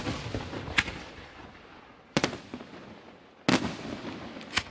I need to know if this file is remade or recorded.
recorded